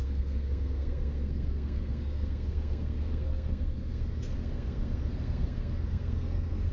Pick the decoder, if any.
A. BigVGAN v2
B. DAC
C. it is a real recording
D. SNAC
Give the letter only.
D